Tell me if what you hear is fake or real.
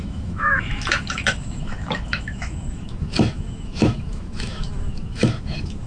fake